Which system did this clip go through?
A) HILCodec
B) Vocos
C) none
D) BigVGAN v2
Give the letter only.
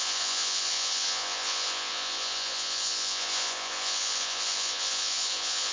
B